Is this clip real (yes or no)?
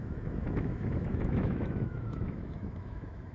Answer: no